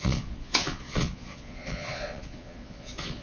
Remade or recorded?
remade